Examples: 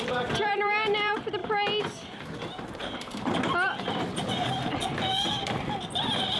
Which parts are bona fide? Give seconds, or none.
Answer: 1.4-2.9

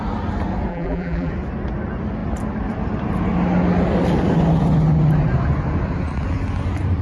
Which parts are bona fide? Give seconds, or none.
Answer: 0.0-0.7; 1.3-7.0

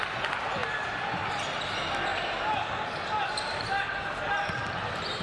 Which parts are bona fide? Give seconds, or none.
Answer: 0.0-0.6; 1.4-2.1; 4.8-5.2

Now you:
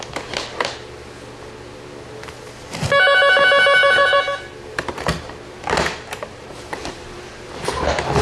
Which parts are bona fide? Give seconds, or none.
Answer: 0.0-3.8; 7.2-8.2